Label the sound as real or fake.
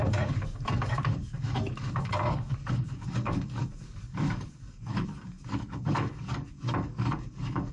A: fake